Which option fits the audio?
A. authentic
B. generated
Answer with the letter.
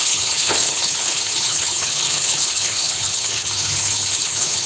B